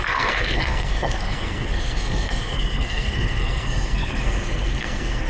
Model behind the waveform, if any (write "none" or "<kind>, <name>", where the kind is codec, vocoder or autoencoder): codec, SNAC